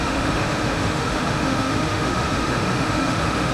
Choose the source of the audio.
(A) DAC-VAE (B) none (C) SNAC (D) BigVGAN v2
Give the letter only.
A